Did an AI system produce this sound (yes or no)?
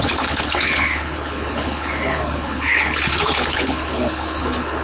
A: yes